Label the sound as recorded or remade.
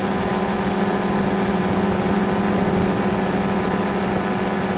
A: recorded